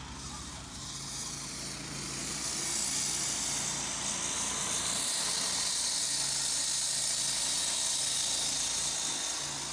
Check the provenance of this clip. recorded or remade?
recorded